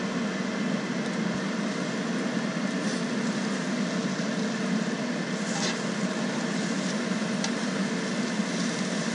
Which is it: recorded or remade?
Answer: recorded